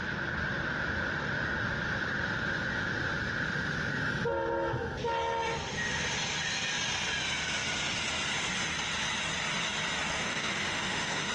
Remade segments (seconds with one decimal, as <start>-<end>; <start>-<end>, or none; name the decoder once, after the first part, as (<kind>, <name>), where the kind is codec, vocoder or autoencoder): 10.2-11.3 (autoencoder, DAC-VAE)

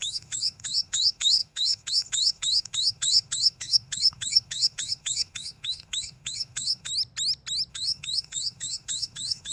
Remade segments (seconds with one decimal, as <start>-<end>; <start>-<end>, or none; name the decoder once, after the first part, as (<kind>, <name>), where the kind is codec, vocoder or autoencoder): 0.0-6.9 (autoencoder, DAC-VAE); 7.7-9.5

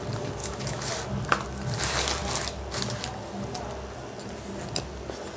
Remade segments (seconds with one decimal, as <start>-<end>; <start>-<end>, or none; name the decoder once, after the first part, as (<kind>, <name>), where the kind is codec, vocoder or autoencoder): 0.4-0.9 (autoencoder, DAC-VAE)

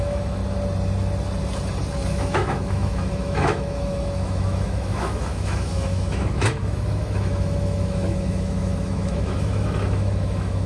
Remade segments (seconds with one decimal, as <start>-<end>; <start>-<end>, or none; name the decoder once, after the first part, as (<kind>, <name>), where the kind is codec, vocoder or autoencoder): 0.0-0.4 (autoencoder, DAC-VAE); 2.1-10.7

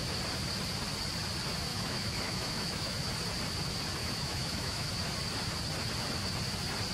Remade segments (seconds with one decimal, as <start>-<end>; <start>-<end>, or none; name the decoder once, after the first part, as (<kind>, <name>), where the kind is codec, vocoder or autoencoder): 1.7-3.1 (autoencoder, DAC-VAE); 4.0-4.9